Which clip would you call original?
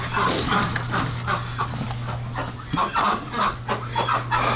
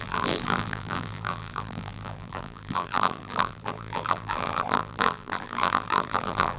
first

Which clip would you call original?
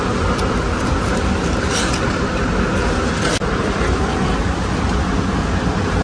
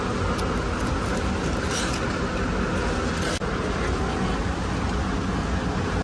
second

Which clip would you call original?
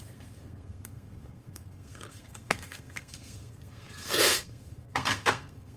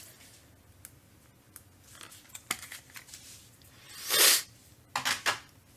second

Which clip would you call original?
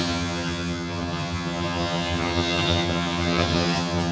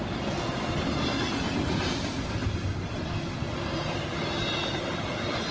second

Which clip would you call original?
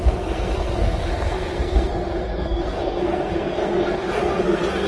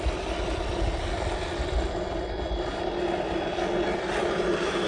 second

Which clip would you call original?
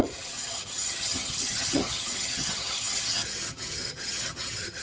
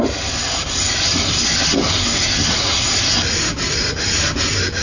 second